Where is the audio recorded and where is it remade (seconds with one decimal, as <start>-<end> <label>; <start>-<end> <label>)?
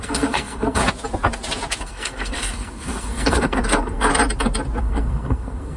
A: 0.0-0.8 remade; 0.8-1.8 recorded; 1.8-4.1 remade; 4.1-4.8 recorded; 4.8-5.8 remade